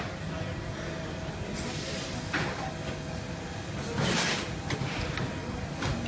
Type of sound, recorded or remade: recorded